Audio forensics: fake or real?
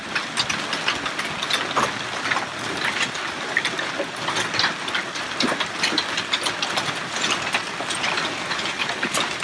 real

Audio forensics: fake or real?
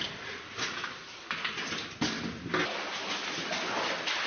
real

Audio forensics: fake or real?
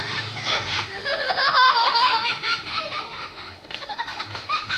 fake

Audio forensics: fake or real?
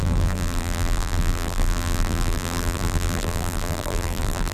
fake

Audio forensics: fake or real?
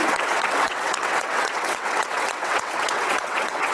fake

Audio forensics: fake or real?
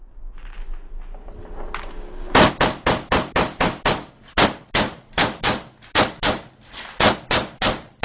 real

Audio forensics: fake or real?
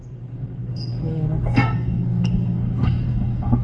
fake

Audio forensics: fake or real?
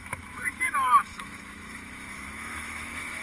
fake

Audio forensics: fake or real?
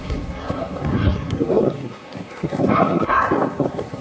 fake